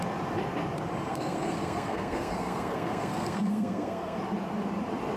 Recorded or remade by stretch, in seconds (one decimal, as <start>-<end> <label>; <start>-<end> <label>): 0.0-1.1 recorded; 1.1-4.2 remade; 4.2-5.2 recorded